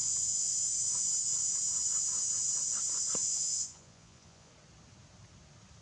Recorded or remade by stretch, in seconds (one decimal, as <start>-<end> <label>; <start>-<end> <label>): 0.0-0.6 remade; 0.6-3.2 recorded; 3.2-4.5 remade; 4.5-5.8 recorded

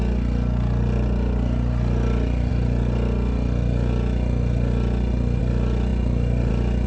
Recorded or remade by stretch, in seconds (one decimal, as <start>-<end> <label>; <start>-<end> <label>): 0.0-6.9 recorded